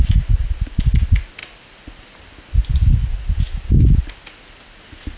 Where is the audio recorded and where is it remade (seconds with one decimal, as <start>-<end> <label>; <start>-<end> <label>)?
0.0-5.2 recorded